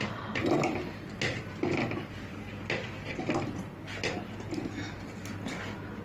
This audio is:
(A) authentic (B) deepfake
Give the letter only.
A